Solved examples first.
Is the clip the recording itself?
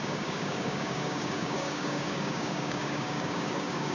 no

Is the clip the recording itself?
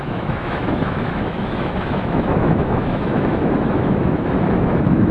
no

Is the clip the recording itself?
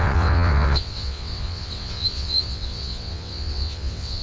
no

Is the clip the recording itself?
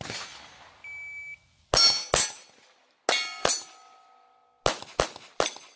yes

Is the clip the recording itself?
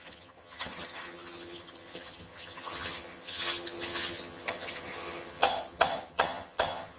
no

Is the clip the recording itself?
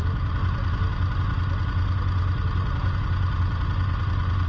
yes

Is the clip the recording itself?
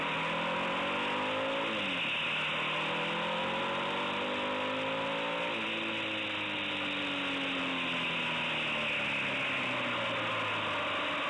yes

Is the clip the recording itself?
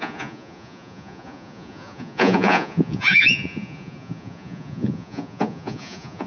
no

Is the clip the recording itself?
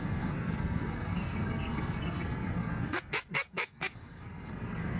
no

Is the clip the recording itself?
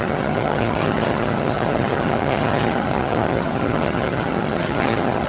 no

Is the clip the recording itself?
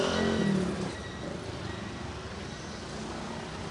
yes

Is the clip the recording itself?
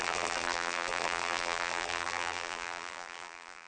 no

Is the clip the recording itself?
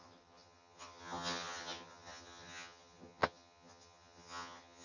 no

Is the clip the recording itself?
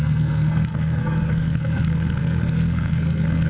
no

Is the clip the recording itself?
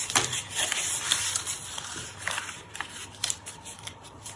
no